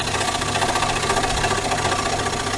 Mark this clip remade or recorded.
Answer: recorded